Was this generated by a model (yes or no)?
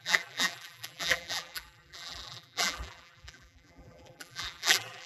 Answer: yes